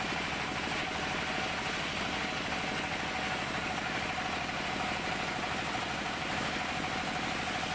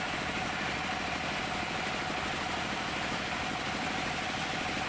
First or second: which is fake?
second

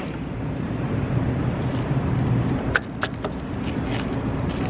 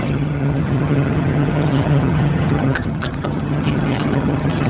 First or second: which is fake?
second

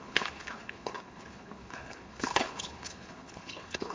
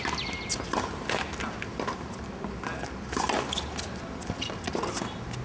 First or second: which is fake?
first